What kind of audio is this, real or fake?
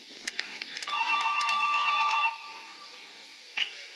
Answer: fake